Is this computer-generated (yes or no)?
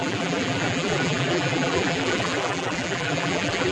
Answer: yes